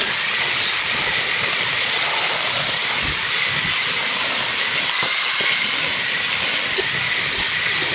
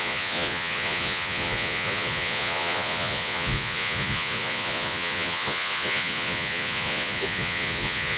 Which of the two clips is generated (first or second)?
second